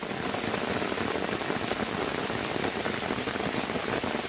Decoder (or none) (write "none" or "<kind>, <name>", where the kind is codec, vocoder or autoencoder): none